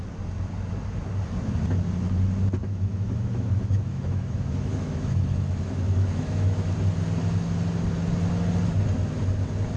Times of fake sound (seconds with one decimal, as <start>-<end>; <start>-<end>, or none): 2.6-6.7